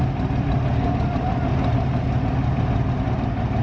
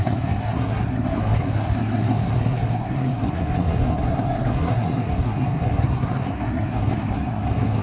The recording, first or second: first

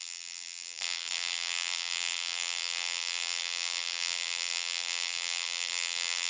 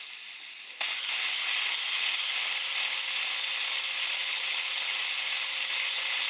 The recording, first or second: second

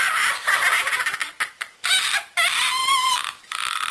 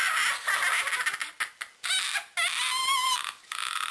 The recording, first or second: second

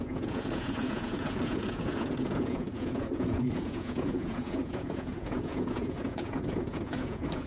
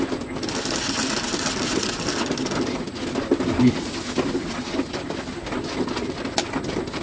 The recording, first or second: second